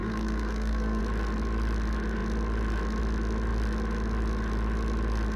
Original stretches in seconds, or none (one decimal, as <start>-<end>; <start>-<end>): 1.0-5.4